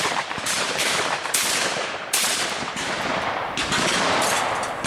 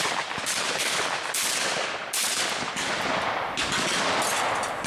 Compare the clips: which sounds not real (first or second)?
first